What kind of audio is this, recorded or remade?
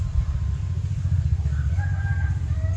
recorded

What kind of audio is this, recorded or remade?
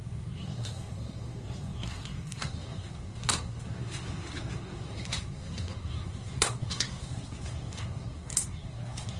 remade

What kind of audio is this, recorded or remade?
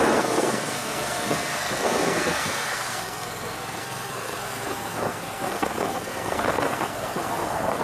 remade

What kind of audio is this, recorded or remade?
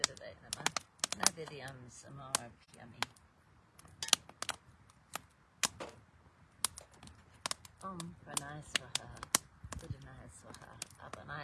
recorded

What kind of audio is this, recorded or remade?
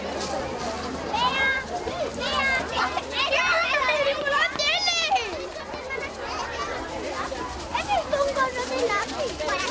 recorded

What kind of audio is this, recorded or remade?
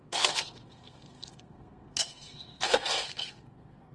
remade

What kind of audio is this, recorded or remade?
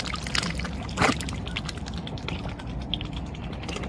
recorded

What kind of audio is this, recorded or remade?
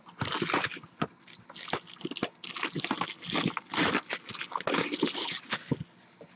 recorded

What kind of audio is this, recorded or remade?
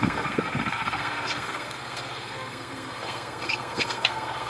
remade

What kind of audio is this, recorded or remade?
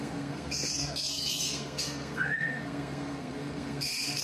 remade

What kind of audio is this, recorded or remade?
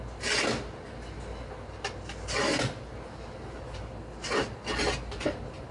recorded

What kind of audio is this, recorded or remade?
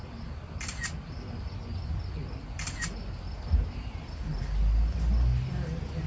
recorded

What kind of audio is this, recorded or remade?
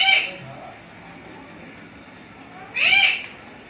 recorded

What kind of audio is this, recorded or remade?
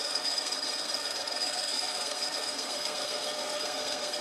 remade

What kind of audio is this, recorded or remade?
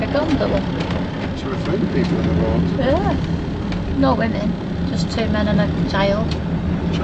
recorded